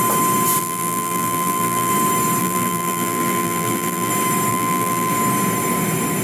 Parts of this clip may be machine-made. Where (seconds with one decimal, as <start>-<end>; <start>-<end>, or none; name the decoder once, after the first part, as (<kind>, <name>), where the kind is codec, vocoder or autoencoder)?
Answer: 0.6-1.9 (vocoder, BigVGAN v2); 2.4-4.1; 4.5-5.1